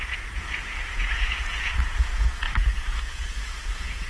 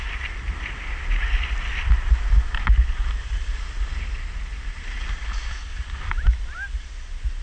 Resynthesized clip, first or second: first